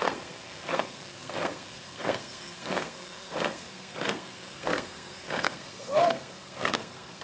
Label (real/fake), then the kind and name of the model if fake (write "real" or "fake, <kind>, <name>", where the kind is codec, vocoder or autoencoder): fake, codec, SNAC